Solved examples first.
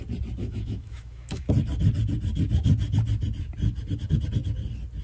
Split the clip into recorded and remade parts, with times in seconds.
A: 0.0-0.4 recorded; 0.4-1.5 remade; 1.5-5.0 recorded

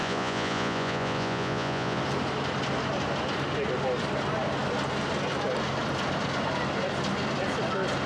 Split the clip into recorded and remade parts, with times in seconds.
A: 0.0-2.0 remade; 2.0-8.1 recorded

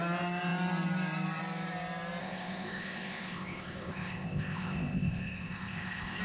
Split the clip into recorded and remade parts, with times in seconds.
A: 0.0-2.2 recorded; 2.2-6.2 remade

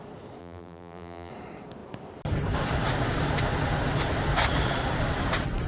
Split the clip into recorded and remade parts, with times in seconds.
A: 0.0-0.4 recorded; 0.4-1.3 remade; 1.3-5.7 recorded